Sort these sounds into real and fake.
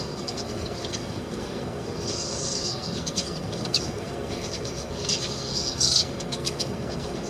fake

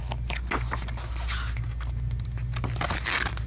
real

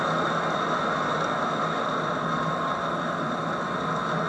real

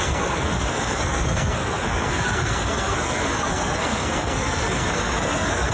fake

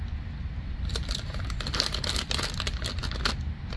real